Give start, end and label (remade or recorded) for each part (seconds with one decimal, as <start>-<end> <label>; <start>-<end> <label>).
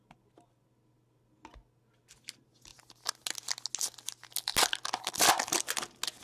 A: 0.0-6.2 recorded